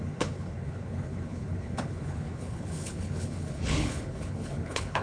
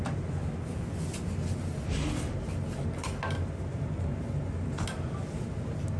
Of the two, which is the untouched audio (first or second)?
second